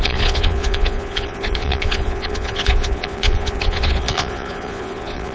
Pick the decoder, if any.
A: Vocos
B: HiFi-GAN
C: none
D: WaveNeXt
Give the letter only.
A